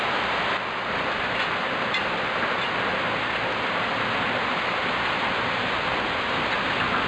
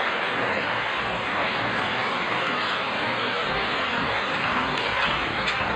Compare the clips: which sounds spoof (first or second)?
second